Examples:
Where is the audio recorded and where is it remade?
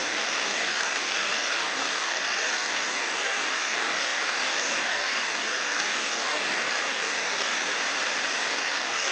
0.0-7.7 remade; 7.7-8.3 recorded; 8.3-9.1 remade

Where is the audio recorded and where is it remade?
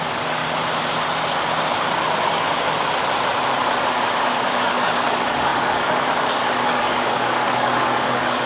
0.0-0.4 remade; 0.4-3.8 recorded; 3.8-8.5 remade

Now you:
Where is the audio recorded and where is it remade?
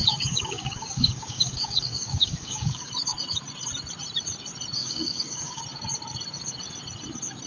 0.0-2.9 remade; 2.9-4.8 recorded; 4.8-5.6 remade; 5.6-7.5 recorded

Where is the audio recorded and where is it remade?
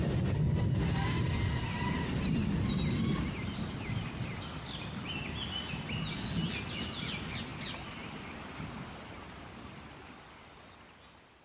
0.0-11.4 recorded